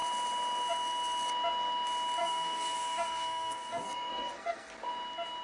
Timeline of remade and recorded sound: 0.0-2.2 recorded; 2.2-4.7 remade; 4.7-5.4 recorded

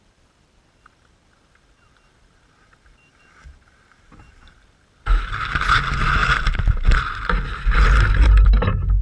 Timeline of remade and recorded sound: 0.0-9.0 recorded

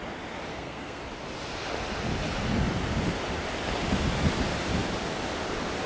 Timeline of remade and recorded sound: 0.0-0.5 recorded; 0.5-1.0 remade; 1.0-5.9 recorded

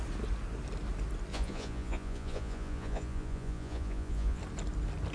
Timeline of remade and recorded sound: 0.0-1.3 recorded; 1.3-4.4 remade; 4.4-5.1 recorded